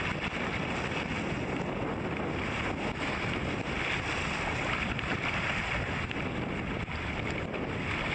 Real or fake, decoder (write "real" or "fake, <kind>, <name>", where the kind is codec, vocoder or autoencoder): real